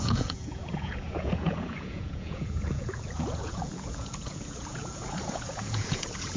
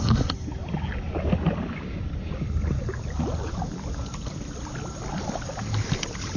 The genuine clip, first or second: second